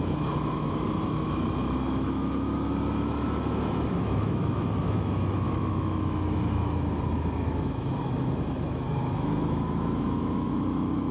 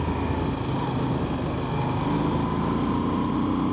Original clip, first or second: second